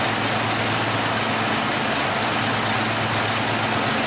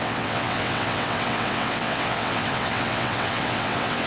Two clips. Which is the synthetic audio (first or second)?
second